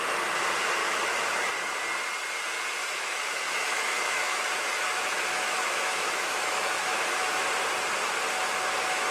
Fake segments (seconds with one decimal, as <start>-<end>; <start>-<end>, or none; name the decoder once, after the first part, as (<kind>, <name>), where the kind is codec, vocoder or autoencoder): 0.8-1.5 (autoencoder, DAC-VAE); 2.8-7.4